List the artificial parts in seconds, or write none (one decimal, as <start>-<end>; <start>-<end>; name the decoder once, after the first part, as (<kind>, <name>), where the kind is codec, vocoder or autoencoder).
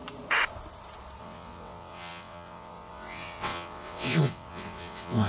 1.2-5.3 (vocoder, WaveNeXt)